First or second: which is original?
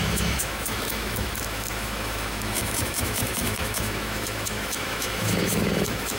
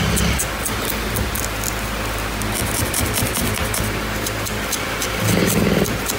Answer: second